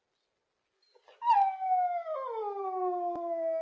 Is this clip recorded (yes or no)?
yes